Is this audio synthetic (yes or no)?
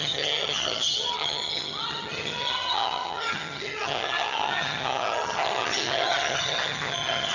yes